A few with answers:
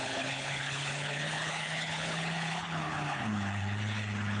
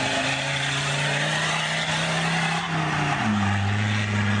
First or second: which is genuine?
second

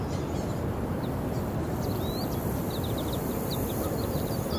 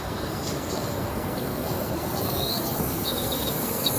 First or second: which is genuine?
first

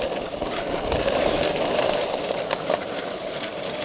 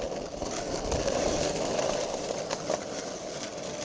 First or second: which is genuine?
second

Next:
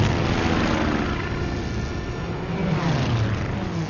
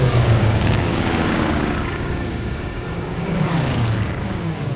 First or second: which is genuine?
first